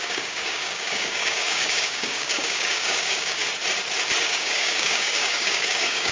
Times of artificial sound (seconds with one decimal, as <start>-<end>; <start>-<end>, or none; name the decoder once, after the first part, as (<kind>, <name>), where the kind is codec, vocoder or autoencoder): 0.0-3.4 (codec, DAC); 4.2-6.1